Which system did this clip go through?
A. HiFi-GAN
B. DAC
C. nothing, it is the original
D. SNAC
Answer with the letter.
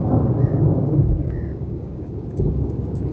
B